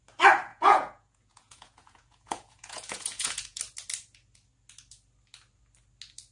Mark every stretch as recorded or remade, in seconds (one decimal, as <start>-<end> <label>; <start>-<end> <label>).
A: 0.0-0.5 recorded; 0.5-3.6 remade; 3.6-6.3 recorded